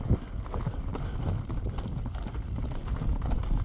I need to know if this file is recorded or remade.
recorded